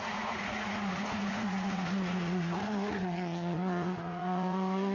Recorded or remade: remade